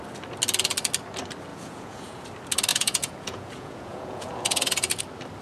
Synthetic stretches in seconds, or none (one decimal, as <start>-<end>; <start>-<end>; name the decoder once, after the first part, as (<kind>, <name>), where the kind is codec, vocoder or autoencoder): 1.5-2.2 (vocoder, Vocos); 2.7-5.0